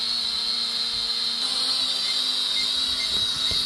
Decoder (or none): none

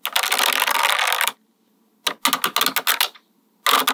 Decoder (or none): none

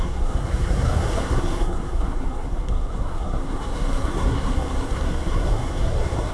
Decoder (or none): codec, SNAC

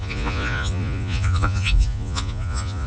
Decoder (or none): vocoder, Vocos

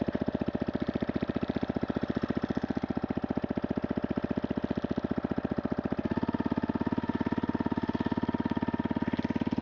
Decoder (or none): none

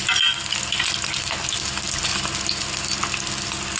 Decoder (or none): none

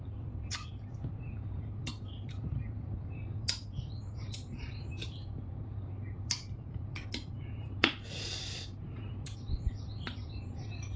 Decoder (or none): vocoder, BigVGAN v2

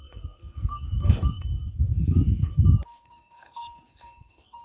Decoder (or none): codec, SNAC